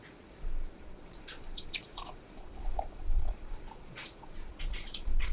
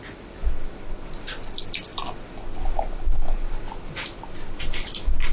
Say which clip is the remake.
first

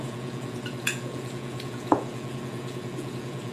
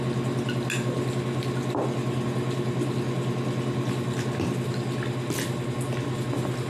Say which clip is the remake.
first